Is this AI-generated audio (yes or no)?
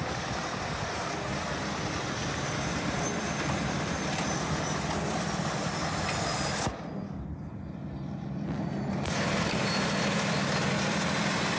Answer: no